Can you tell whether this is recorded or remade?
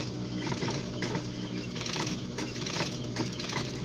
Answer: remade